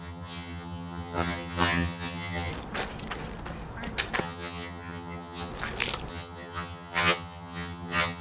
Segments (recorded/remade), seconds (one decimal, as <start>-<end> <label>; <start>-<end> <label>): 0.0-2.5 remade; 2.5-4.2 recorded; 4.2-5.5 remade; 5.5-6.1 recorded; 6.1-8.2 remade